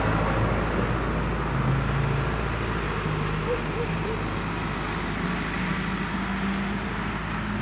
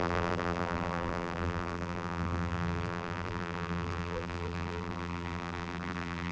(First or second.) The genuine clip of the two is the first